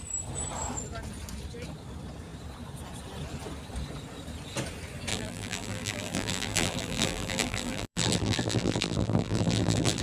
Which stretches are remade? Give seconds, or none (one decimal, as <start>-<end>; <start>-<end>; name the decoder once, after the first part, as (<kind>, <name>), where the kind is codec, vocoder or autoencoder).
5.1-10.0 (vocoder, BigVGAN v2)